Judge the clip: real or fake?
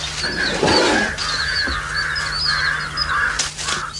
real